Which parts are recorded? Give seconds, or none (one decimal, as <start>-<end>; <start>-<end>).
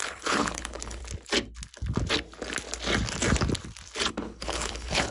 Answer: 1.0-4.1